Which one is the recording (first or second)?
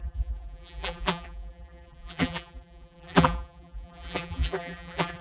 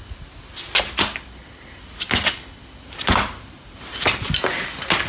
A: second